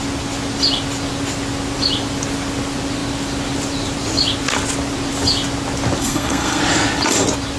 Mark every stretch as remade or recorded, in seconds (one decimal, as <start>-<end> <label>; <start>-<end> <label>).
0.0-6.0 recorded; 6.0-6.6 remade; 6.6-7.6 recorded